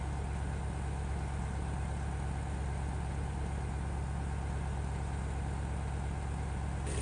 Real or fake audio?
real